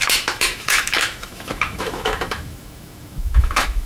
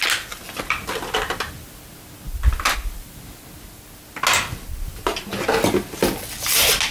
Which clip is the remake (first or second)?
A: first